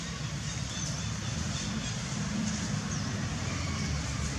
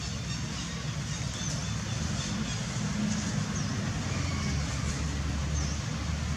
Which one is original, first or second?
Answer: second